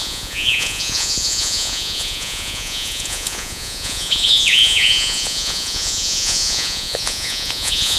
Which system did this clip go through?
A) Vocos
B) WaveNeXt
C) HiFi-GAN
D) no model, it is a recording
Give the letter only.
A